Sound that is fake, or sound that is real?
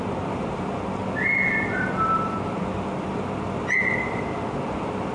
real